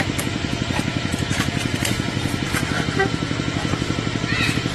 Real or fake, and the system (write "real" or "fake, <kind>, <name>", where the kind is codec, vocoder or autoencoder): real